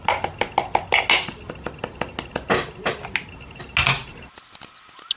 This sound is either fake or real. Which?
real